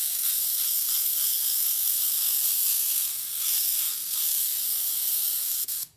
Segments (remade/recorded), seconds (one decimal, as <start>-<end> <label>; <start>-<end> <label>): 0.0-6.0 remade